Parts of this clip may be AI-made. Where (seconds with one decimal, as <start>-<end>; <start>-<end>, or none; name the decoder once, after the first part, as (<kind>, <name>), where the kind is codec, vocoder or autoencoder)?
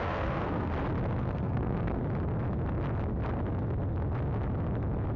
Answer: 0.0-0.7 (codec, SNAC); 1.2-2.0